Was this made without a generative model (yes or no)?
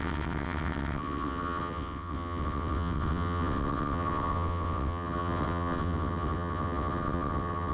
no